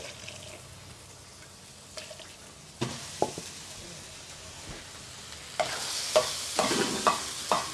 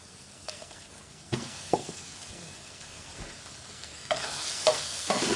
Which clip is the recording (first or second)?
first